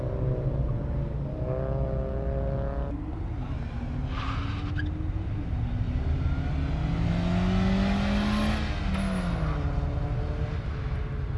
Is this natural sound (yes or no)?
yes